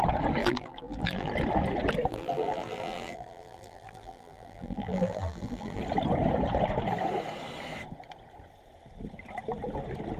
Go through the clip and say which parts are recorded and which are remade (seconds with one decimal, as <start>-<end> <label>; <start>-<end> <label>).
0.0-0.4 recorded; 0.4-1.3 remade; 1.3-2.1 recorded; 2.1-5.8 remade; 5.8-10.2 recorded